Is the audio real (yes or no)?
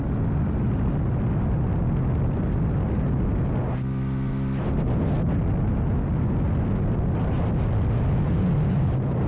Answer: yes